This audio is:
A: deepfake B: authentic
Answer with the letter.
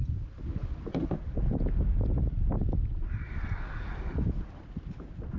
B